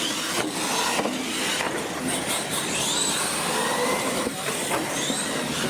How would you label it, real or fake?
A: real